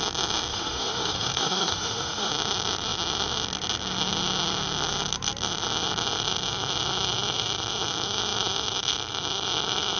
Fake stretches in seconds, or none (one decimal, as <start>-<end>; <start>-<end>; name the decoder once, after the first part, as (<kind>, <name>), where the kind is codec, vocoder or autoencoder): 0.5-2.3 (autoencoder, DAC-VAE)